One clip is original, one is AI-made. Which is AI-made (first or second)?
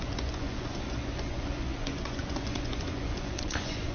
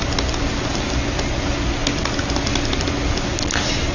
first